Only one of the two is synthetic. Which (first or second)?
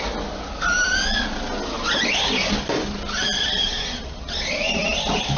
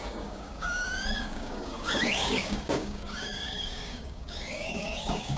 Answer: second